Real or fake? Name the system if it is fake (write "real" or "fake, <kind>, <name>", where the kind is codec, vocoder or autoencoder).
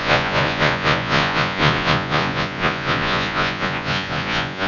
fake, vocoder, Vocos